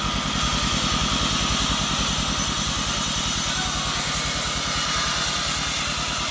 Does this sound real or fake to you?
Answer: real